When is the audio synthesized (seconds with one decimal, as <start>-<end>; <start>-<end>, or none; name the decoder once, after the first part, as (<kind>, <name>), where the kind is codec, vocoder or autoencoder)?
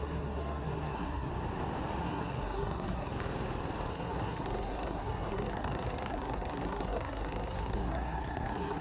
0.0-1.3 (codec, SNAC); 2.0-3.1; 3.9-8.8